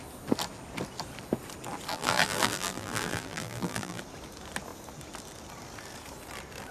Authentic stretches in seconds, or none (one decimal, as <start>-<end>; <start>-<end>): 0.0-1.9; 4.0-6.7